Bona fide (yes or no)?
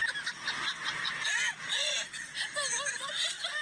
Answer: yes